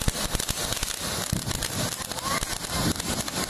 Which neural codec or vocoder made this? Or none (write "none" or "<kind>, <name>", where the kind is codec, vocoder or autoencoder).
none